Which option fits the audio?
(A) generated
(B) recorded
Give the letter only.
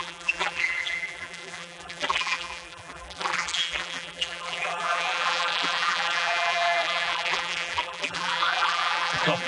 A